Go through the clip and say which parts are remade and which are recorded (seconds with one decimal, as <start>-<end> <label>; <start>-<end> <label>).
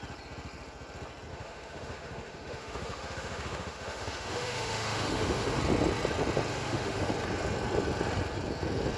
0.0-1.3 recorded; 1.3-5.6 remade; 5.6-6.5 recorded; 6.5-7.1 remade; 7.1-9.0 recorded